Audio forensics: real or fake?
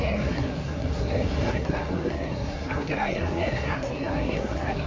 fake